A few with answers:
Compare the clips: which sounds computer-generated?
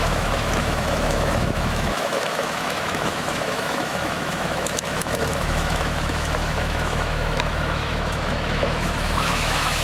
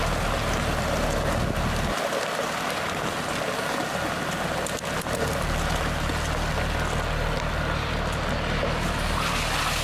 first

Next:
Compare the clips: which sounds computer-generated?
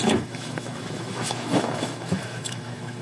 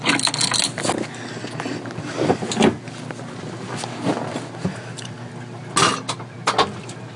first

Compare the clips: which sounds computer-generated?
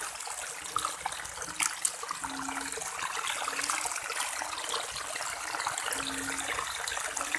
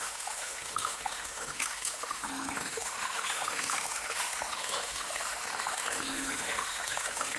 second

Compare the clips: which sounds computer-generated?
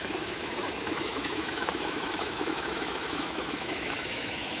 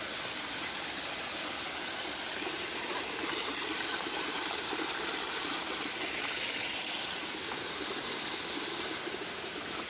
first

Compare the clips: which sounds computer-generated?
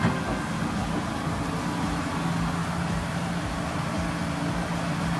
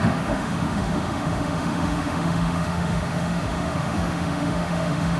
second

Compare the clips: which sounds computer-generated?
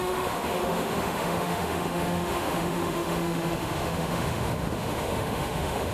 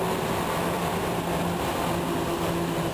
first